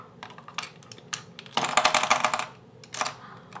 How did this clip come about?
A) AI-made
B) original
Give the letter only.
B